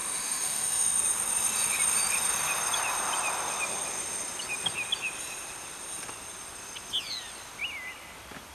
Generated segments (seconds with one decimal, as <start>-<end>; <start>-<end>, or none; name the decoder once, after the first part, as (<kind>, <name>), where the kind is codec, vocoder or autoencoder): 0.0-1.0 (autoencoder, DAC-VAE)